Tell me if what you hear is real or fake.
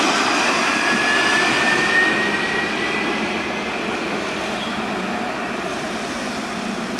real